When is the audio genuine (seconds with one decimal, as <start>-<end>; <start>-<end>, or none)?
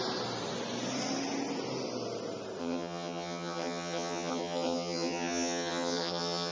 0.0-2.6